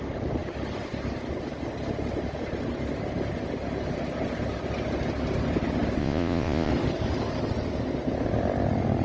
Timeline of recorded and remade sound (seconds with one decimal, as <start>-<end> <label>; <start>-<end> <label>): 0.0-6.0 recorded; 6.0-6.7 remade; 6.7-9.0 recorded